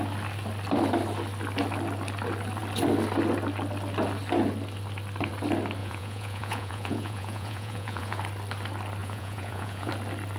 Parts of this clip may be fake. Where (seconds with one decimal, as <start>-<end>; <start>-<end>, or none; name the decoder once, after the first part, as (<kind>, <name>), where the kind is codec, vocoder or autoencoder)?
5.8-8.2 (vocoder, Vocos); 9.0-9.9